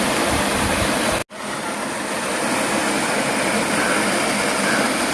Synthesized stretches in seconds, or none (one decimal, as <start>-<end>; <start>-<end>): none